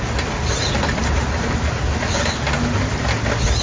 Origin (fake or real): real